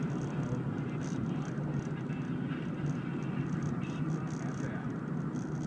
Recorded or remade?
recorded